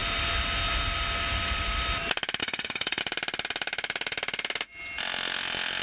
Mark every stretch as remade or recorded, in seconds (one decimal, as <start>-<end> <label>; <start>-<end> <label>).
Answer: 0.0-2.4 recorded; 2.4-3.0 remade; 3.0-5.8 recorded